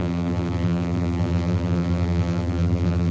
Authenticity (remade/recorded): remade